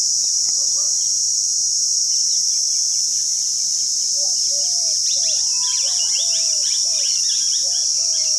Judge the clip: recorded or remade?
remade